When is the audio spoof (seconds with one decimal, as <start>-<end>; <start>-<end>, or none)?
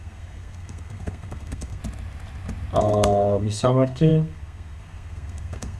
0.0-1.8; 2.8-5.8